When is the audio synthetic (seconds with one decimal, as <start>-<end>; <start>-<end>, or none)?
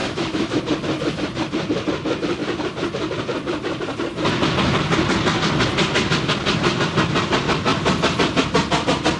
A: 0.0-0.6